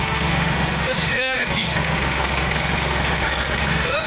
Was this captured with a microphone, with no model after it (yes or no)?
no